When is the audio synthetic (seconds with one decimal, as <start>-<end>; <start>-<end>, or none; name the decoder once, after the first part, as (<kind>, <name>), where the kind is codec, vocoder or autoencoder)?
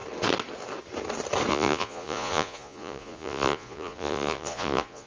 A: 1.5-5.1 (vocoder, Vocos)